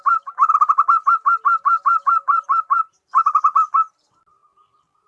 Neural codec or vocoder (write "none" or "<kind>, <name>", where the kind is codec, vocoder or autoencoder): vocoder, BigVGAN v2